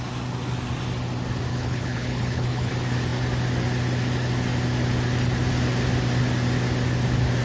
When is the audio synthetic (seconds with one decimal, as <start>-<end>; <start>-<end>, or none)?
1.5-2.7